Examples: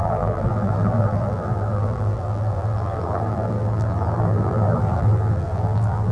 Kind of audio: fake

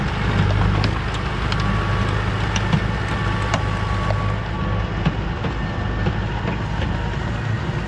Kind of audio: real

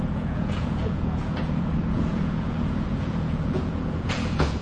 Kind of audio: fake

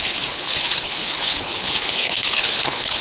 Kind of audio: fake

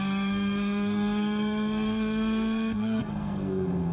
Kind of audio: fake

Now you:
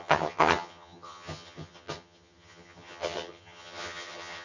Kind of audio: fake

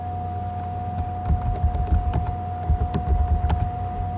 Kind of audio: real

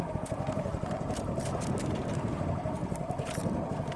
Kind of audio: fake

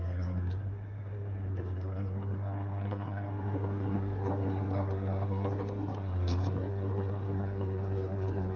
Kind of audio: fake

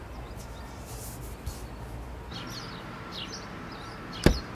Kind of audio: real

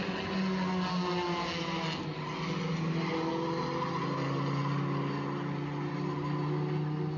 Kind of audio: real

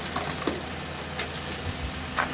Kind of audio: real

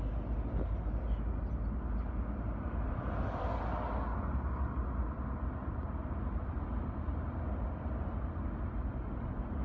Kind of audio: real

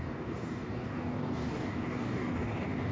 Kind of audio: fake